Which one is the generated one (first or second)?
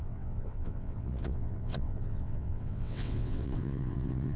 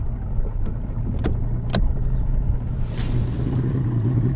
first